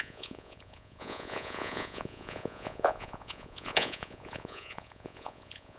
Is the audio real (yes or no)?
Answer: no